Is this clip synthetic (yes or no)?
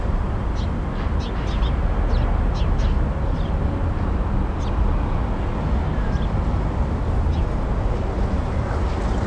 no